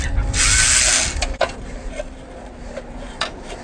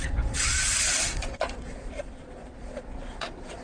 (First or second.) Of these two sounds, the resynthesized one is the second